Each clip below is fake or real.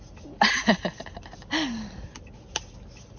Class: real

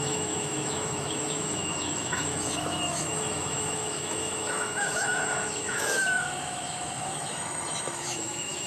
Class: fake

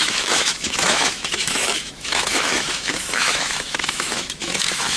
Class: fake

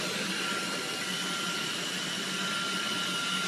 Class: real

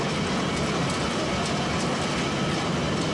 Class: real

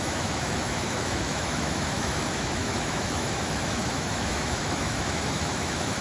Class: fake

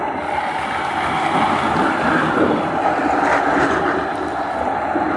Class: real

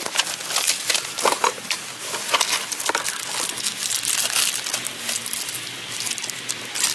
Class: real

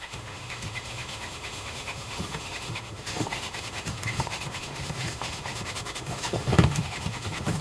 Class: fake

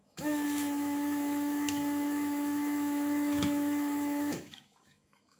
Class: fake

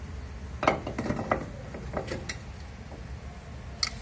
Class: real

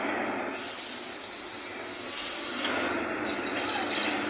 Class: real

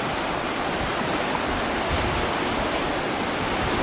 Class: real